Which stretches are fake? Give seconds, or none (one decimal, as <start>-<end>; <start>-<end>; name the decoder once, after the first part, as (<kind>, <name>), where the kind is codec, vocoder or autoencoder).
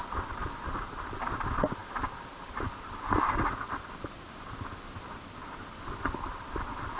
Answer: none